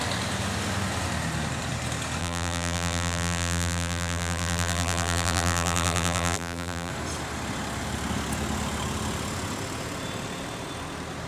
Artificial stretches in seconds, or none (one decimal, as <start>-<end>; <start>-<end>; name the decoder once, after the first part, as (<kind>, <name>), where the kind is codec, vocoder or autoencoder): 2.2-6.9 (vocoder, BigVGAN v2)